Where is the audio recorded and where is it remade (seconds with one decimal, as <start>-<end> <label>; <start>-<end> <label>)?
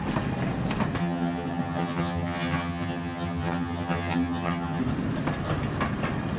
0.0-1.0 recorded; 1.0-4.8 remade; 4.8-6.4 recorded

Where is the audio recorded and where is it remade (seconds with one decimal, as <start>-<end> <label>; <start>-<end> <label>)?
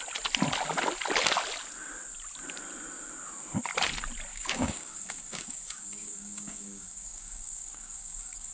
0.0-4.3 recorded; 4.3-8.5 remade